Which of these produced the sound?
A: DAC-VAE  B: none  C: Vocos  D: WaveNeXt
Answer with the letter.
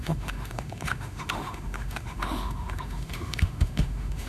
A